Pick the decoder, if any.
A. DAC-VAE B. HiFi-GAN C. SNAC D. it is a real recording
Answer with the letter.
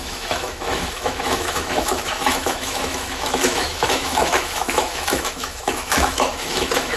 A